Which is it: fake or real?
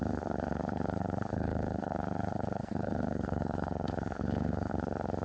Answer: fake